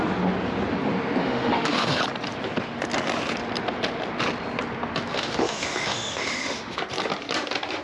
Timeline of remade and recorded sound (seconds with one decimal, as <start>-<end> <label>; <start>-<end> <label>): 0.0-1.2 recorded; 1.2-2.0 remade; 2.0-5.1 recorded; 5.1-6.8 remade; 6.8-7.8 recorded